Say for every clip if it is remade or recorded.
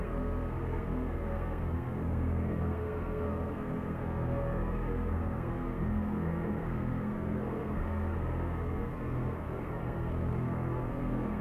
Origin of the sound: remade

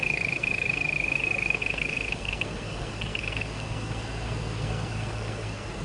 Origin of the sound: remade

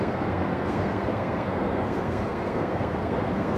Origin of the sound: remade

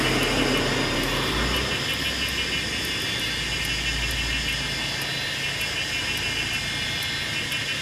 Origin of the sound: recorded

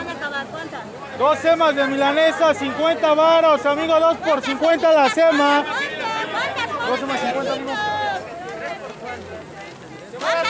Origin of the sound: recorded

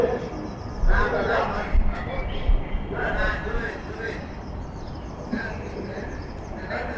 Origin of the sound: recorded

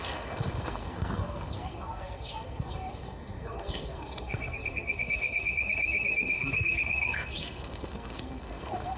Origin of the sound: remade